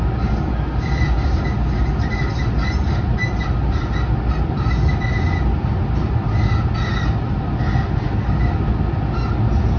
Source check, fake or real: real